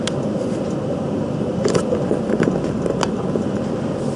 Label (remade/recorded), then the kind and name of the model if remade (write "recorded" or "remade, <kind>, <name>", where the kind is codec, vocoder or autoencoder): recorded